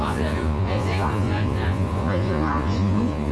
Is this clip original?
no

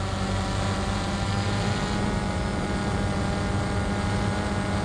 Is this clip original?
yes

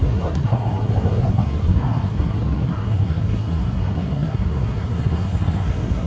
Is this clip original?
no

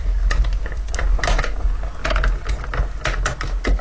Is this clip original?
yes